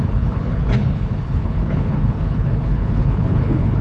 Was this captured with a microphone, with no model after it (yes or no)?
no